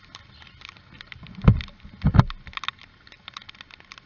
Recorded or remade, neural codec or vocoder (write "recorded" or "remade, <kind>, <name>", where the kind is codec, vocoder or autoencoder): recorded